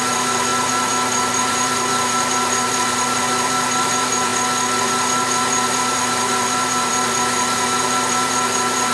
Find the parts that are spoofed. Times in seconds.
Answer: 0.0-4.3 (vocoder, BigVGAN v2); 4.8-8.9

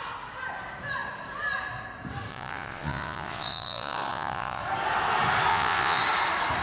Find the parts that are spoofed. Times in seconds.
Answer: 2.3-4.6 (vocoder, Vocos); 5.5-6.0

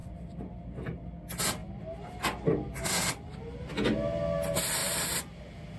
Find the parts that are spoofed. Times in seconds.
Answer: 0.0-1.1 (vocoder, BigVGAN v2); 4.8-5.8

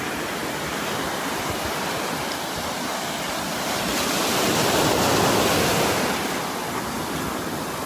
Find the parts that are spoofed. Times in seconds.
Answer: 0.4-5.1 (vocoder, BigVGAN v2)

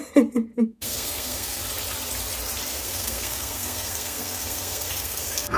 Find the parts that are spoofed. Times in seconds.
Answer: 0.5-1.6 (codec, SNAC); 2.7-5.6

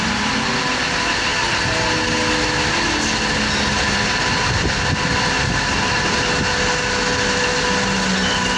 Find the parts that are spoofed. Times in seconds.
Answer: none